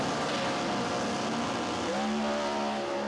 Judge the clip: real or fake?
real